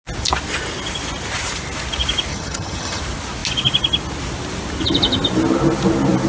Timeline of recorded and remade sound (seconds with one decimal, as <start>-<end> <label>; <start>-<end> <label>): 0.0-2.3 recorded; 2.3-3.0 remade; 3.0-6.3 recorded